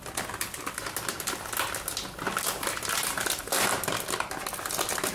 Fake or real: real